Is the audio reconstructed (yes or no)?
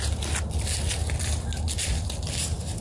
no